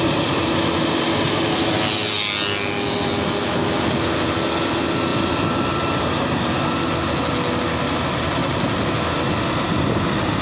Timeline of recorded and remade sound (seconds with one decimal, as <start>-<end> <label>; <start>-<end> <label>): 0.0-10.4 recorded